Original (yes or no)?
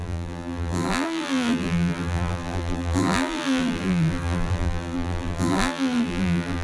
no